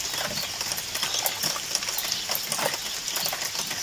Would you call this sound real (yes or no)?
yes